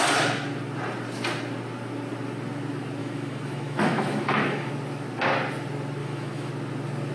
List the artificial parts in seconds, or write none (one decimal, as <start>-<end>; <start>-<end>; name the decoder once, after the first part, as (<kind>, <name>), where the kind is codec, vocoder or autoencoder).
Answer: 3.0-4.7 (autoencoder, DAC-VAE); 6.0-6.5